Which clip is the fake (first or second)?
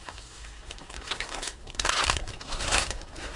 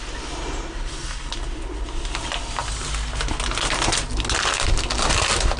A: first